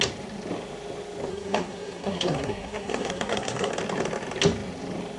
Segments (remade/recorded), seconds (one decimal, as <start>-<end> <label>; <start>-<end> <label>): 0.0-1.3 recorded; 1.3-3.7 remade; 3.7-5.2 recorded